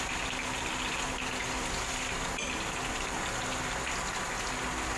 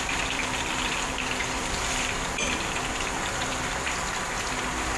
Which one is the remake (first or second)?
second